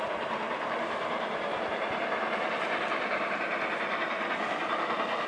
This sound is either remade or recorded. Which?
recorded